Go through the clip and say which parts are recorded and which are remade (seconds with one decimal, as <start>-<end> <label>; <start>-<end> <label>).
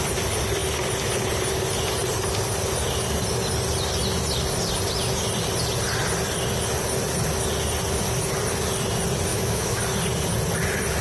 0.0-9.3 recorded; 9.3-9.8 remade; 9.8-11.0 recorded